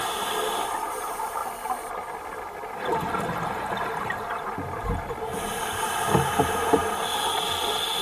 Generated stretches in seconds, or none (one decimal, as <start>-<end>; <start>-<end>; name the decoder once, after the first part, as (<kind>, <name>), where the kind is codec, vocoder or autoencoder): 0.0-1.4 (vocoder, BigVGAN v2); 3.3-6.8